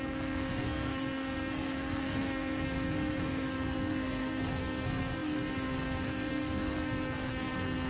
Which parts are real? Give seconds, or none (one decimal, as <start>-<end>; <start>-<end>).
none